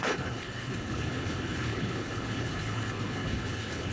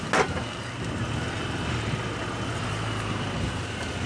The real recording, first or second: second